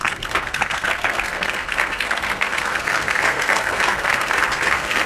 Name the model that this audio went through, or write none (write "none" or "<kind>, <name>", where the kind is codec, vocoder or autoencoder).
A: codec, SNAC